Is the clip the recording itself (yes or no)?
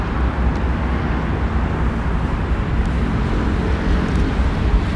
yes